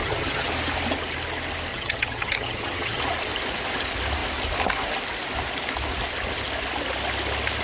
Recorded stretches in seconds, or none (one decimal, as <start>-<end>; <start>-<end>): 0.5-1.7; 3.0-7.6